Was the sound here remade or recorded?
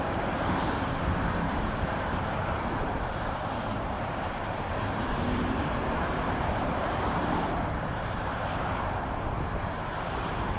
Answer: remade